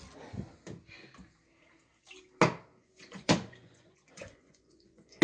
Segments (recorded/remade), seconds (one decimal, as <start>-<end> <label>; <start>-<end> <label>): 0.0-2.7 recorded; 2.7-5.2 remade